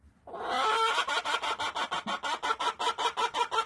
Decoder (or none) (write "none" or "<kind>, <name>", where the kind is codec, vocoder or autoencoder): none